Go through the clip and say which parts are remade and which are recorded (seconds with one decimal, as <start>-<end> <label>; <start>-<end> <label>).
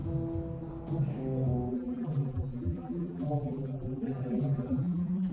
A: 0.0-1.7 recorded; 1.7-5.3 remade